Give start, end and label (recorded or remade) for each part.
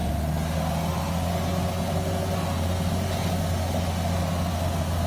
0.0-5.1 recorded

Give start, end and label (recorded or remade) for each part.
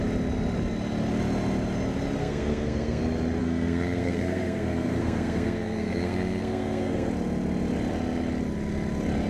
0.0-2.2 recorded; 2.2-3.0 remade; 3.0-3.4 recorded; 3.4-7.1 remade; 7.1-9.3 recorded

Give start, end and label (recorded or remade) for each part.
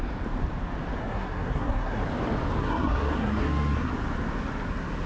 0.0-1.0 recorded; 1.0-2.0 remade; 2.0-2.6 recorded; 2.6-3.9 remade; 3.9-5.1 recorded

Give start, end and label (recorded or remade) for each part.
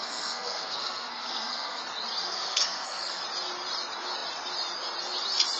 0.0-1.8 remade; 1.8-2.2 recorded; 2.2-3.2 remade; 3.2-5.6 recorded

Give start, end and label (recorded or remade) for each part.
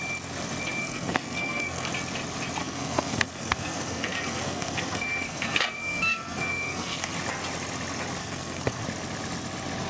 0.0-0.8 recorded; 0.8-1.9 remade; 1.9-2.6 recorded; 2.6-7.1 remade; 7.1-8.2 recorded; 8.2-8.8 remade; 8.8-9.9 recorded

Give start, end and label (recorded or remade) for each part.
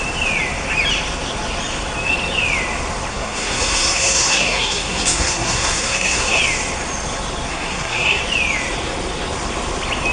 0.0-3.1 recorded; 3.1-6.4 remade; 6.4-7.5 recorded; 7.5-8.2 remade; 8.2-10.1 recorded